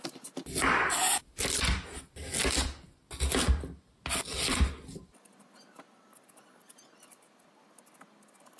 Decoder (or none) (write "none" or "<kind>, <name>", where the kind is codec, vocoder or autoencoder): none